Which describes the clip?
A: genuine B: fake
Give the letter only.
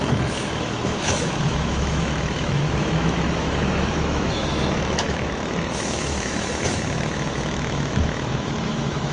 B